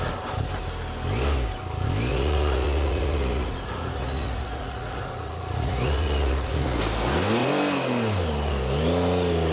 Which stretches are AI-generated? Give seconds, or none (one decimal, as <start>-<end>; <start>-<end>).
2.1-6.8